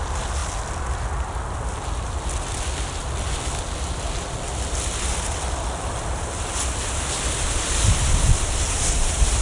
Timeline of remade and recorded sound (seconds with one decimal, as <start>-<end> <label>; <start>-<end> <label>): 0.0-9.4 recorded